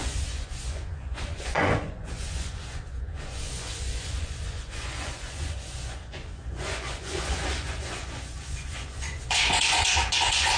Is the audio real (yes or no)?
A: no